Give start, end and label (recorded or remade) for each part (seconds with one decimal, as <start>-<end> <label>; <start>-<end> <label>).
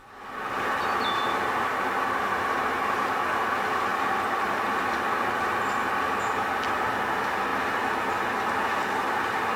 0.0-1.7 recorded; 1.7-2.4 remade; 2.4-9.6 recorded